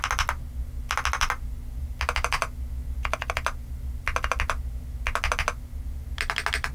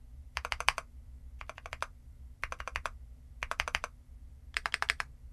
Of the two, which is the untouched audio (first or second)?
first